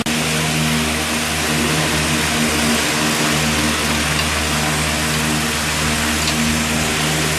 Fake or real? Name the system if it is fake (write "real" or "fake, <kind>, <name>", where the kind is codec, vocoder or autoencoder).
real